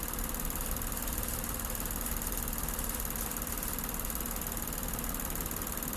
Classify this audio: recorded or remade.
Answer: recorded